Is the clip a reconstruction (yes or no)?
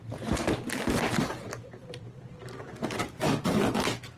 yes